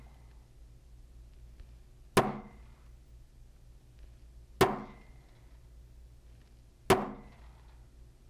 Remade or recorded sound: recorded